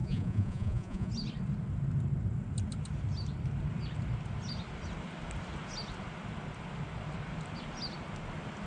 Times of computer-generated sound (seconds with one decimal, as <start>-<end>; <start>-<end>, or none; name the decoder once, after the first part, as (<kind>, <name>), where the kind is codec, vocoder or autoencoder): 0.0-1.1 (vocoder, Vocos)